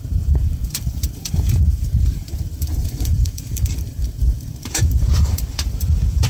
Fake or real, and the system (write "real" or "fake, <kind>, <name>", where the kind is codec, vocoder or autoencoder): fake, vocoder, BigVGAN v2